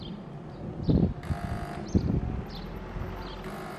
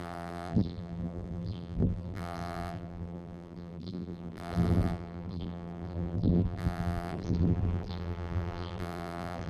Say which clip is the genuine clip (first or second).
first